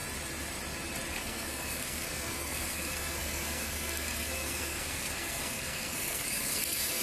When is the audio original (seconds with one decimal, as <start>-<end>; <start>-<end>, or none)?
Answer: 0.0-1.1